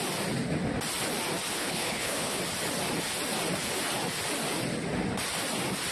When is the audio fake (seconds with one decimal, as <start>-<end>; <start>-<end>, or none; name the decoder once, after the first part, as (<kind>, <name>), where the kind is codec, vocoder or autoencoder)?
1.5-2.4 (codec, HILCodec)